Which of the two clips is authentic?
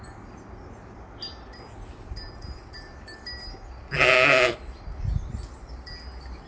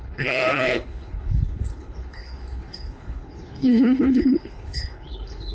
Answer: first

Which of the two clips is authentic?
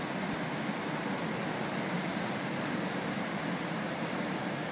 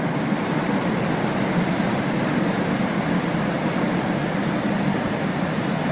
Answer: first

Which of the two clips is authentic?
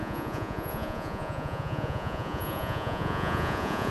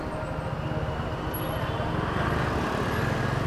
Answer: second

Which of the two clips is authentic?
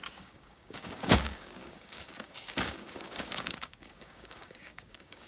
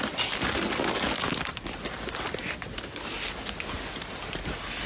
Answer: second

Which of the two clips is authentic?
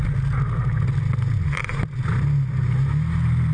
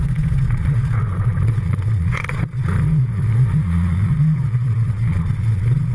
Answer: first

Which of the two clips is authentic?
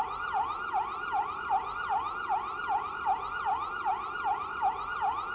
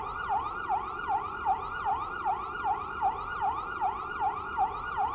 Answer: first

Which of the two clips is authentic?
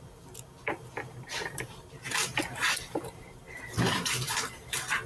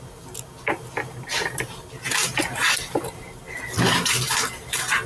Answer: second